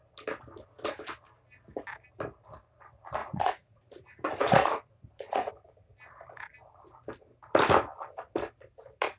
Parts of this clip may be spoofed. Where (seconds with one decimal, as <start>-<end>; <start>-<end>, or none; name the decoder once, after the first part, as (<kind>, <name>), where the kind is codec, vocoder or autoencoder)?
3.2-5.5 (vocoder, Vocos)